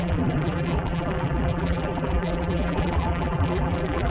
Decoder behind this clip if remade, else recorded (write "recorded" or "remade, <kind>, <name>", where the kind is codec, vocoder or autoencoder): remade, vocoder, BigVGAN v2